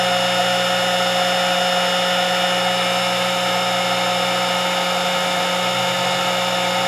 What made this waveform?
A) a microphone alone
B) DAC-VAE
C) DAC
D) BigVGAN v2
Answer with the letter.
A